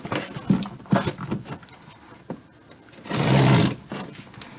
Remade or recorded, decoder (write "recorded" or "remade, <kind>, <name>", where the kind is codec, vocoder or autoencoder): recorded